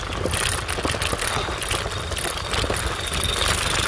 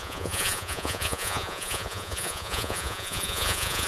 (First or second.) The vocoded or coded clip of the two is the second